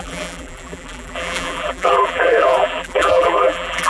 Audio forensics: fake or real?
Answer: fake